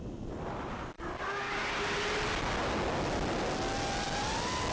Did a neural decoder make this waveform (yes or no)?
no